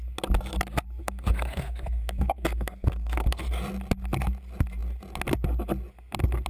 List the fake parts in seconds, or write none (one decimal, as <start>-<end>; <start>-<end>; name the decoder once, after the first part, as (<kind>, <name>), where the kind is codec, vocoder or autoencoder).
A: 1.0-3.4 (codec, SNAC)